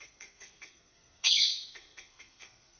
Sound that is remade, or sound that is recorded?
remade